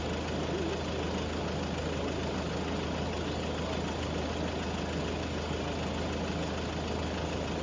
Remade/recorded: recorded